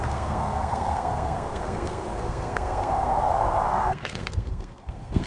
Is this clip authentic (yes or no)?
no